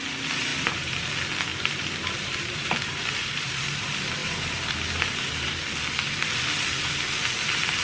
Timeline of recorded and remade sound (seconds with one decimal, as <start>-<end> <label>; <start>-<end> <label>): 0.0-0.5 recorded; 0.5-1.1 remade; 1.1-1.5 recorded; 1.5-3.6 remade; 3.6-4.2 recorded; 4.2-5.6 remade; 5.6-7.8 recorded